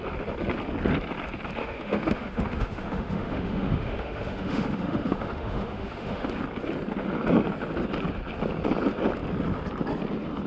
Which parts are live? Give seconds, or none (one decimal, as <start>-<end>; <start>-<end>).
0.0-1.6; 6.3-10.5